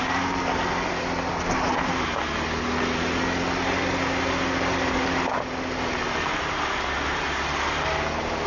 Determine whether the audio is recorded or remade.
recorded